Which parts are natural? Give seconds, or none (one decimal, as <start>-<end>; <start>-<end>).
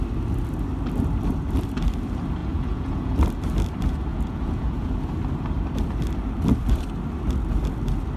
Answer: 0.0-2.4; 3.1-4.1; 4.9-8.2